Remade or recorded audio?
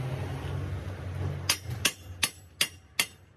recorded